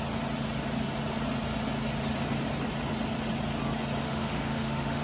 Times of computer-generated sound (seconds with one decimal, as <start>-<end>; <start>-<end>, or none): 4.0-5.0